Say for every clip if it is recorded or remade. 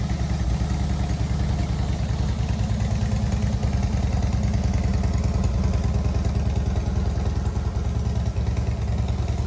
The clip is recorded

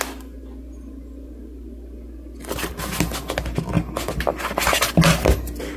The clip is recorded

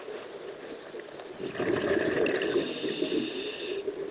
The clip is recorded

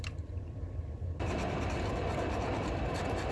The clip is remade